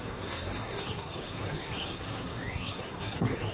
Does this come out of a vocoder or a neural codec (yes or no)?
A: yes